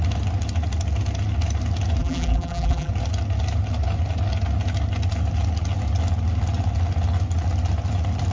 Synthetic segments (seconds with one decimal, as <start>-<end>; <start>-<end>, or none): 2.0-2.9